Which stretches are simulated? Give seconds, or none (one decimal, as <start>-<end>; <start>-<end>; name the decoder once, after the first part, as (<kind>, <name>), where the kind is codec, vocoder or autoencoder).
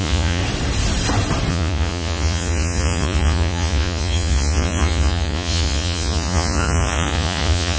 0.0-0.4 (vocoder, Vocos); 1.5-7.8